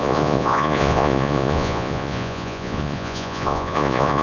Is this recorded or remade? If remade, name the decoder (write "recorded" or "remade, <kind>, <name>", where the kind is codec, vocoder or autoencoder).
remade, vocoder, Vocos